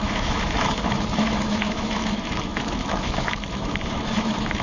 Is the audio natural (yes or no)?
no